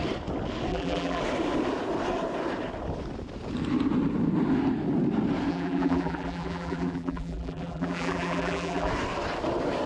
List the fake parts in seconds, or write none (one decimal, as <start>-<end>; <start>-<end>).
0.7-1.2; 5.5-8.9